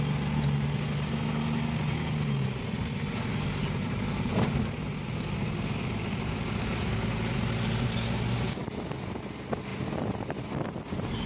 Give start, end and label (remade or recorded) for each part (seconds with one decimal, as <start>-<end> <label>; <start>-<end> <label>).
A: 0.0-3.6 recorded; 3.6-4.3 remade; 4.3-11.3 recorded